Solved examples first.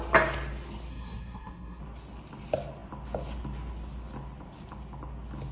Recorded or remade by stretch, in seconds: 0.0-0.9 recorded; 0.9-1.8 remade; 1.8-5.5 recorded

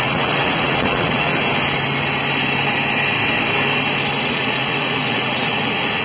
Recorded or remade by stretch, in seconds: 0.0-1.3 remade; 1.3-4.2 recorded; 4.2-6.0 remade

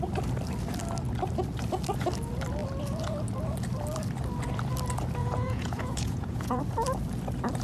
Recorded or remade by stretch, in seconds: 0.0-5.2 recorded; 5.2-6.6 remade; 6.6-7.6 recorded